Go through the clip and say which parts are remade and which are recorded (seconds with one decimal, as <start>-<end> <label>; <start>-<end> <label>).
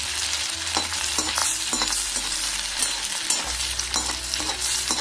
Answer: 0.0-5.0 recorded